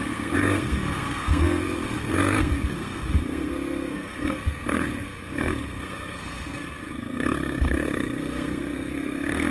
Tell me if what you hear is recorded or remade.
remade